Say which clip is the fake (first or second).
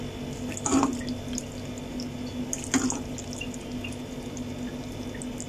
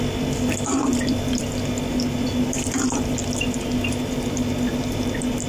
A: second